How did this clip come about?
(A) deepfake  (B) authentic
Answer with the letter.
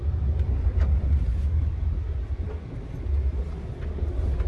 B